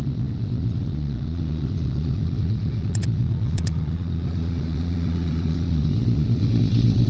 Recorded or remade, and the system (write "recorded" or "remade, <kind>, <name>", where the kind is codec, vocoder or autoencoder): remade, vocoder, Vocos